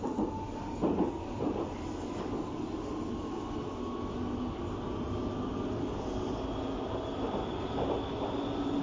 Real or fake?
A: real